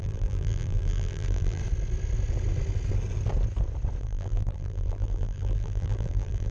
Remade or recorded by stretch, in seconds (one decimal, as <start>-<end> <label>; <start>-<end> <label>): 0.0-1.6 remade; 1.6-4.0 recorded; 4.0-6.5 remade